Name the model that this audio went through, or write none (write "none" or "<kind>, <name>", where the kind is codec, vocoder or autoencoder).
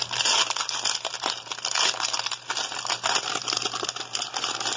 none